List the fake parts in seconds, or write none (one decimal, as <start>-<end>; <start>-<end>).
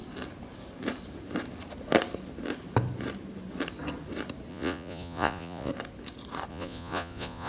4.5-5.7; 6.5-7.5